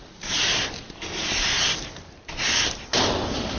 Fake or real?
real